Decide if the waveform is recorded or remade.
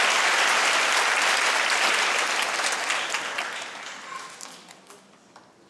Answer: recorded